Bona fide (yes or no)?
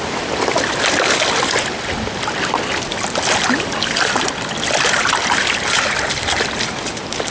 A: yes